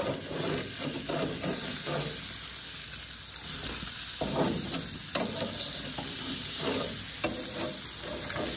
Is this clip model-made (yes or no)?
no